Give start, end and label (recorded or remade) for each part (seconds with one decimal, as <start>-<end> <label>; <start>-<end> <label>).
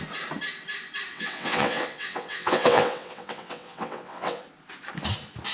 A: 0.0-1.1 recorded; 1.1-4.4 remade; 4.4-5.5 recorded